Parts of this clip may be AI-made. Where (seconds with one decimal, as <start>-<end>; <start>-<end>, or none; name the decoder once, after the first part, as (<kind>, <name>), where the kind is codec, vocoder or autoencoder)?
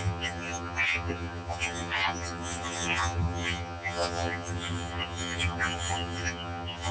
0.0-6.9 (vocoder, HiFi-GAN)